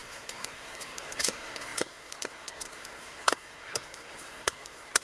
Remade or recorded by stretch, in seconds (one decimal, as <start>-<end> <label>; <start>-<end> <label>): 0.0-5.0 remade